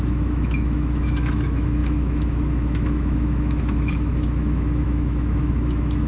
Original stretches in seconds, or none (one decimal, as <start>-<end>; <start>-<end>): none